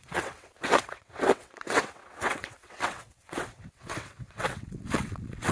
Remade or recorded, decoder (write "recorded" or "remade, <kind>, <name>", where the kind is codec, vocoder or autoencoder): remade, vocoder, WaveNeXt